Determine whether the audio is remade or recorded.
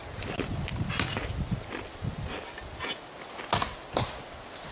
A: recorded